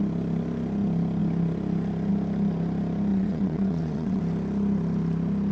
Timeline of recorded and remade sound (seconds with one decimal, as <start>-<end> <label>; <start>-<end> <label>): 0.0-3.1 recorded; 3.1-4.2 remade; 4.2-5.5 recorded